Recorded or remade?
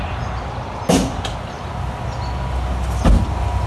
recorded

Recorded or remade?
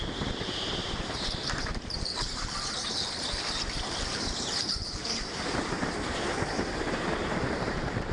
remade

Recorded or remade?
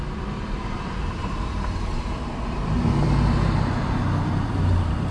remade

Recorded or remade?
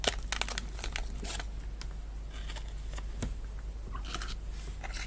recorded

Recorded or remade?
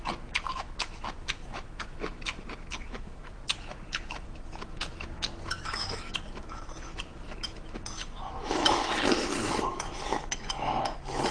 remade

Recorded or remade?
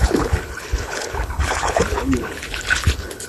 remade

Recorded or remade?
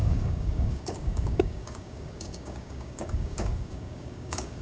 remade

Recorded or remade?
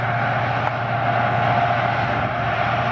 recorded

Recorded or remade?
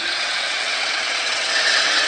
remade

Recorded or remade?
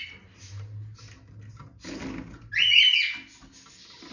recorded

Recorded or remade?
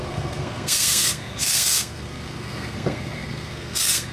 remade